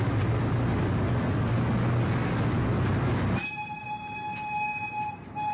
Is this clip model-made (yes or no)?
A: no